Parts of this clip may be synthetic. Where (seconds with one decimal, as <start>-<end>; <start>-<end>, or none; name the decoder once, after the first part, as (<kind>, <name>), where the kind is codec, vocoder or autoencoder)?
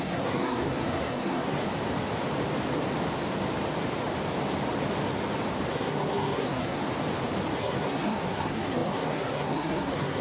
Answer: 0.0-1.7 (codec, SNAC); 5.7-6.8; 7.6-10.2